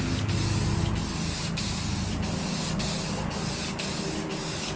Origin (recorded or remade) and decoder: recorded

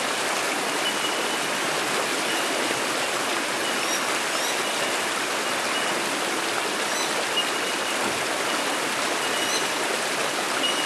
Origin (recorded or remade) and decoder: recorded